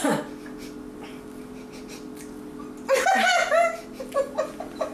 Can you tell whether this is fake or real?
real